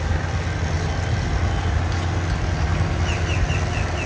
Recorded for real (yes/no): yes